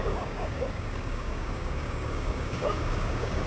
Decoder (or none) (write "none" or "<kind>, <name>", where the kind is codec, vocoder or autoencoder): codec, DAC